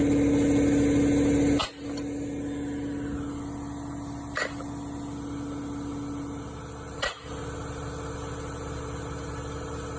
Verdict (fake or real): real